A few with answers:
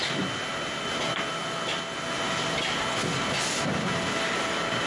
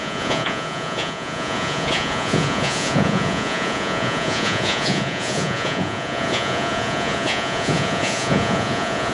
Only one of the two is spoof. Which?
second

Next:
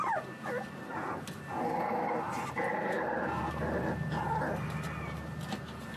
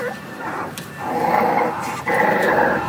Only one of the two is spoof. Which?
second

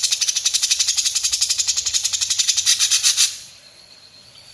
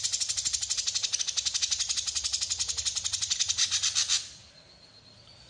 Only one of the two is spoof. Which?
first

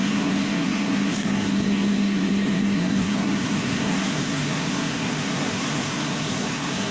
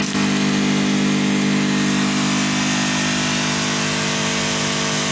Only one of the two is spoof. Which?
first